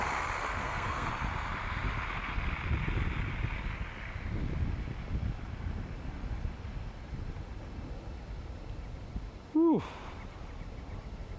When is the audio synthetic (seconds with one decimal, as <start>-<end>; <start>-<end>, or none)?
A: 0.6-1.1